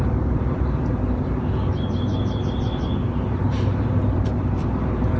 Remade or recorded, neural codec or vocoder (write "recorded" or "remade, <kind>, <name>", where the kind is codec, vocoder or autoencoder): remade, vocoder, BigVGAN v2